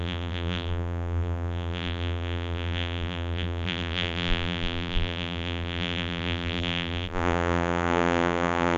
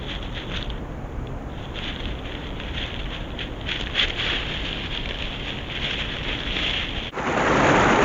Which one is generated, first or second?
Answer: first